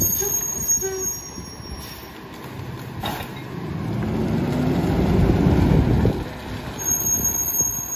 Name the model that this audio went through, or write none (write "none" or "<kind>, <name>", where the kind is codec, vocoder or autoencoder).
none